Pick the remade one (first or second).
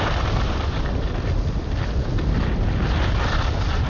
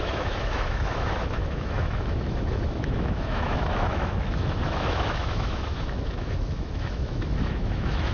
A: second